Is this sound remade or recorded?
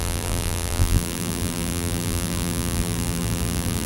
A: remade